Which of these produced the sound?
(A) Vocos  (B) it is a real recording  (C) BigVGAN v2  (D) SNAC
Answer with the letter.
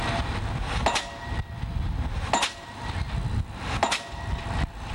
B